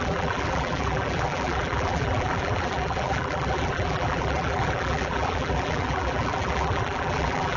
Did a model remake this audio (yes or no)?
yes